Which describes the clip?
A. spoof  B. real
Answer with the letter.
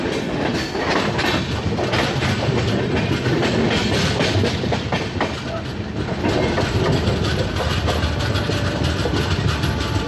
B